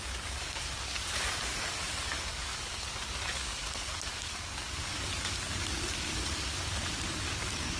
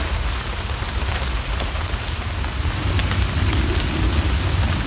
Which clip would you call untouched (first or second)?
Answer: second